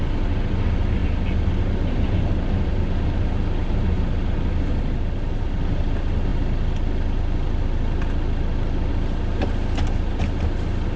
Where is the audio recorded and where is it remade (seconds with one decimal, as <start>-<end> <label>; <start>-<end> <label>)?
0.0-11.0 recorded